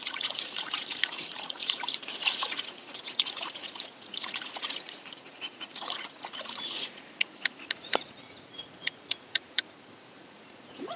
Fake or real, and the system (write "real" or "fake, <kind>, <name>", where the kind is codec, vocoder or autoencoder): fake, vocoder, Vocos